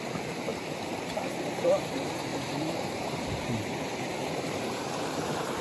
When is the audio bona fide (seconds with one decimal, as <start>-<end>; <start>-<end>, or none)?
0.5-1.3